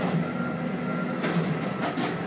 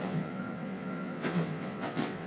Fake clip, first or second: second